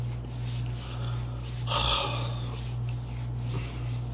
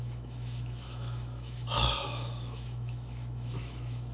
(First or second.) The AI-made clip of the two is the second